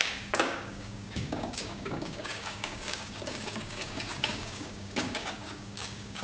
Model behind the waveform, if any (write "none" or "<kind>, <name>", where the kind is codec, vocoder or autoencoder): codec, DAC